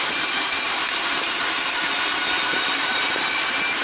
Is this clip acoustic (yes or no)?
no